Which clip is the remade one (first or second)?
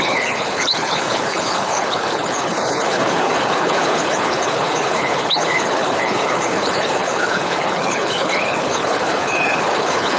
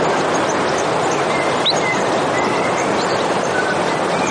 first